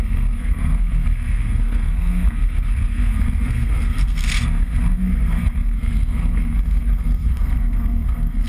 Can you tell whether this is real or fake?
fake